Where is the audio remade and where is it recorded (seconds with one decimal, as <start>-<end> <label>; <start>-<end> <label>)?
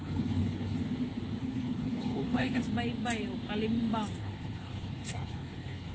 0.0-0.8 remade; 0.8-1.4 recorded; 1.4-2.6 remade; 2.6-4.2 recorded; 4.2-5.9 remade